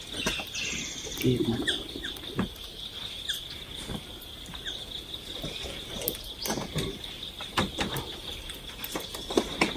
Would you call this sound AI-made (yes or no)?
no